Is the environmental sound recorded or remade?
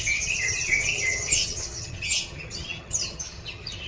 remade